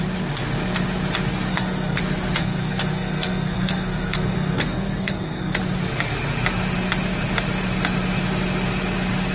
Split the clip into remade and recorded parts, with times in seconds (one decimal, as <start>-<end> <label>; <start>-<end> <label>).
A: 0.0-1.5 recorded; 1.5-2.0 remade; 2.0-2.4 recorded; 2.4-5.6 remade; 5.6-9.3 recorded